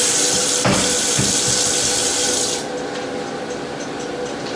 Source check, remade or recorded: recorded